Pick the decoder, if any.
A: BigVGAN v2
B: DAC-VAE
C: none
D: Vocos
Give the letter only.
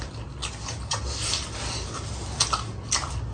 C